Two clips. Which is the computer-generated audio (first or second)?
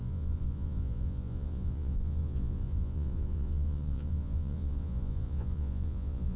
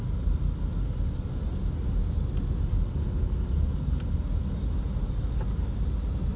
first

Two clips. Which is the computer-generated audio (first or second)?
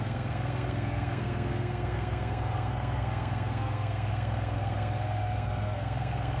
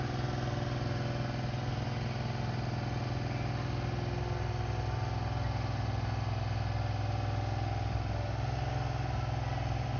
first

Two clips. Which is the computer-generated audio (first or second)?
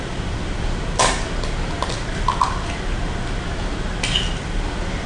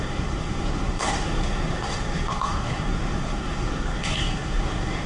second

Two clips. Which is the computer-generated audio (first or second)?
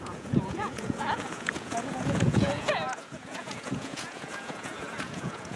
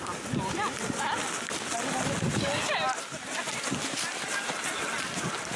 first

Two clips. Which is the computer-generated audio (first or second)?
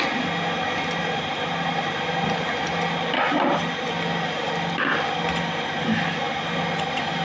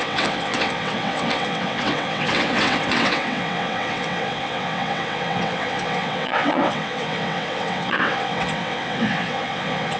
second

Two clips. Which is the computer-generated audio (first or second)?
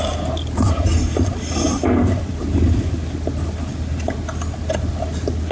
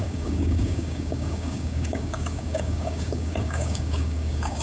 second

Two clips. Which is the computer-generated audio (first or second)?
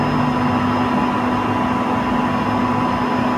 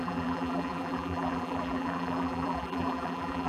second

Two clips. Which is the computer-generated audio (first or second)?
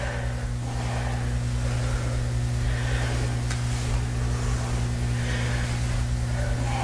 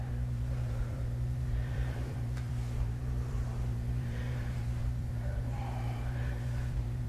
second